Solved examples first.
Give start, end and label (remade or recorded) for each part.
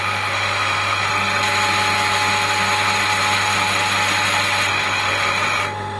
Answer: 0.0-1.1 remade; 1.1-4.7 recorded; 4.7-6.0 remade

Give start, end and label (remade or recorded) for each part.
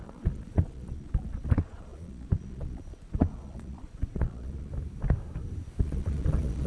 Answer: 0.0-4.7 remade; 4.7-5.8 recorded; 5.8-6.7 remade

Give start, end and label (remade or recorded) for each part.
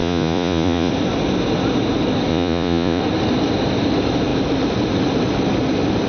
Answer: 0.0-0.9 remade; 0.9-2.3 recorded; 2.3-3.0 remade; 3.0-6.1 recorded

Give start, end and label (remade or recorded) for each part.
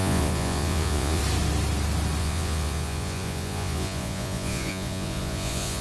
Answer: 0.0-1.2 remade; 1.2-2.2 recorded; 2.2-5.8 remade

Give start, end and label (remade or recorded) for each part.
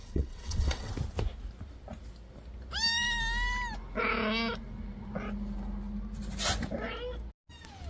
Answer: 0.0-0.9 remade; 0.9-7.9 recorded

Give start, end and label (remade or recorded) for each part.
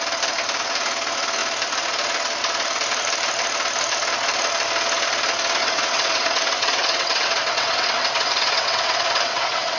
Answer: 0.0-5.6 recorded; 5.6-9.8 remade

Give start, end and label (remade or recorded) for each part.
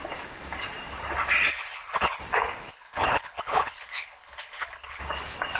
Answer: 0.0-1.5 recorded; 1.5-2.2 remade; 2.2-2.7 recorded; 2.7-5.0 remade; 5.0-5.6 recorded